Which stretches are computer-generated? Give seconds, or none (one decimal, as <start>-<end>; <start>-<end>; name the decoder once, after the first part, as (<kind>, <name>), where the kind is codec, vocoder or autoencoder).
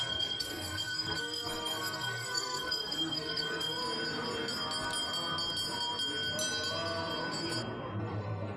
0.0-3.8 (codec, SNAC); 8.0-8.6